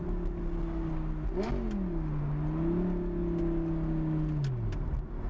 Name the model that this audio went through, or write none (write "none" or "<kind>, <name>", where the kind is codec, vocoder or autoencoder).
none